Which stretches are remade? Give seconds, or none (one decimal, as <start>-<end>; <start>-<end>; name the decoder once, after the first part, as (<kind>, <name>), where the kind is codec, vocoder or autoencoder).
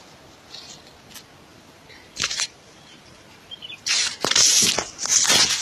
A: 1.5-4.7 (vocoder, BigVGAN v2)